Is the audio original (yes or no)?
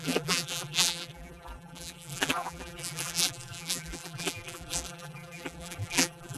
no